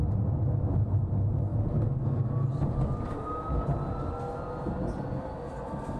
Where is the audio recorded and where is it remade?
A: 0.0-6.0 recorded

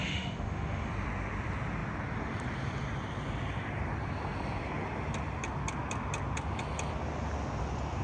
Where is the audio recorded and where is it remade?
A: 0.0-0.9 remade; 0.9-8.0 recorded

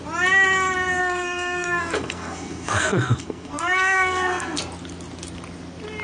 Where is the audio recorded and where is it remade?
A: 0.0-1.0 recorded; 1.0-4.6 remade; 4.6-6.0 recorded